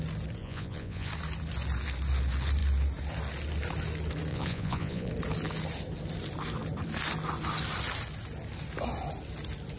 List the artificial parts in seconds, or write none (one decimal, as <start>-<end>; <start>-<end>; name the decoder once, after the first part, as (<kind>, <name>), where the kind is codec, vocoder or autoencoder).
0.4-1.1 (vocoder, Vocos); 4.3-5.1